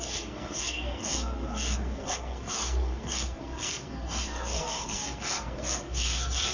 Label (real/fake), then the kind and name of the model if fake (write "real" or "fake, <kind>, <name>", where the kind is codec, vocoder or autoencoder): fake, codec, SNAC